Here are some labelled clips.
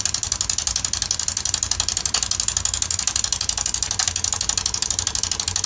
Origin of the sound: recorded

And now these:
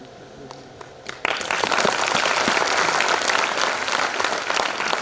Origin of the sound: recorded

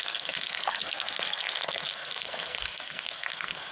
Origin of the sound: remade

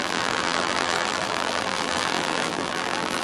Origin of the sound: remade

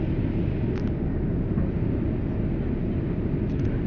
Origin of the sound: recorded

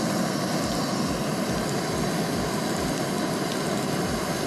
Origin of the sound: recorded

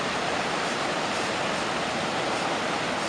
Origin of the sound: recorded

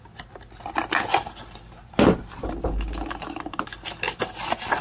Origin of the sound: recorded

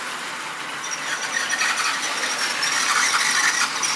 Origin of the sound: recorded